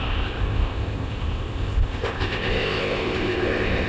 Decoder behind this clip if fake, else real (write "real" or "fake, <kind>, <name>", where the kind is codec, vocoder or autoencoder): fake, codec, ZipCodec